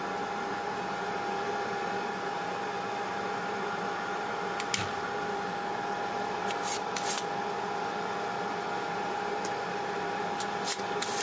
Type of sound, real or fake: real